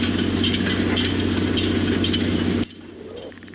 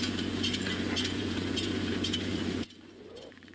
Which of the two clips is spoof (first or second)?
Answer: second